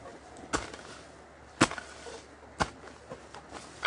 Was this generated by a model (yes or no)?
no